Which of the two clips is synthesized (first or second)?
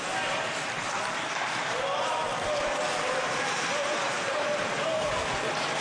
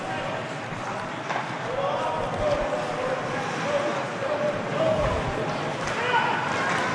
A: first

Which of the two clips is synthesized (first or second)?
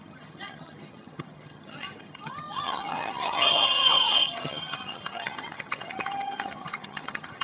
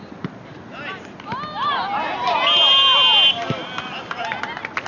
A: first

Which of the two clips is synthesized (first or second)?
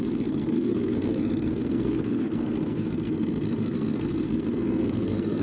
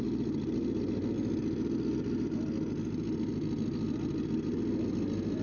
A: first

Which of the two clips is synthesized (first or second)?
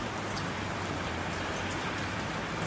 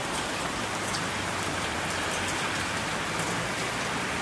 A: second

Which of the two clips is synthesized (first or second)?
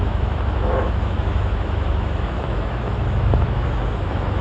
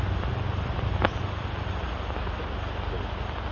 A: first